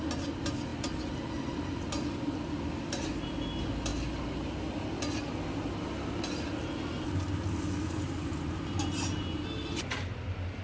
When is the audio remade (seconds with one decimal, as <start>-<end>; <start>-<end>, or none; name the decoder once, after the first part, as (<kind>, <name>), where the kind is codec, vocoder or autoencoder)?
none